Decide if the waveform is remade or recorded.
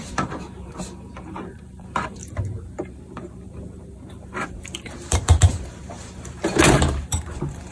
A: remade